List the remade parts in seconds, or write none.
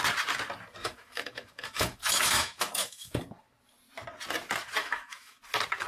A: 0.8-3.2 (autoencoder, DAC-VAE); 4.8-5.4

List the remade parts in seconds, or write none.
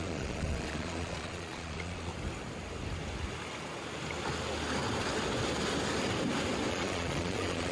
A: 0.0-2.1 (vocoder, Vocos); 6.7-7.7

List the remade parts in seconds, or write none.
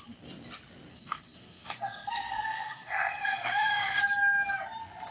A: 0.9-4.0 (codec, SNAC)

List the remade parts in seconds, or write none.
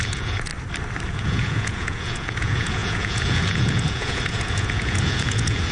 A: 0.0-0.5 (vocoder, Vocos); 1.1-5.7